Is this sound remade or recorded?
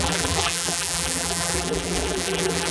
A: remade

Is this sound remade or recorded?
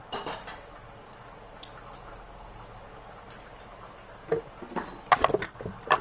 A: recorded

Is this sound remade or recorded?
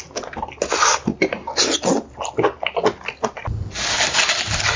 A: recorded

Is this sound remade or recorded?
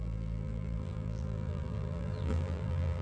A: remade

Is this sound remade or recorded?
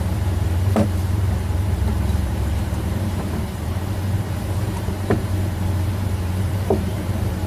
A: remade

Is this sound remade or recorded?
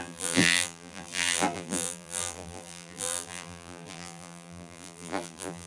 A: remade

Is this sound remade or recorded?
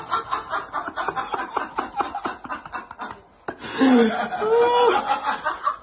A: recorded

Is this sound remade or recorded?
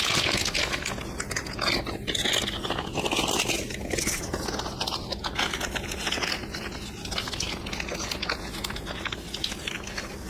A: recorded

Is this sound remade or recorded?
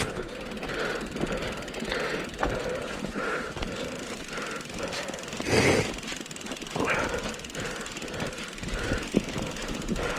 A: recorded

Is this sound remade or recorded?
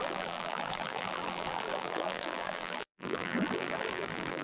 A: remade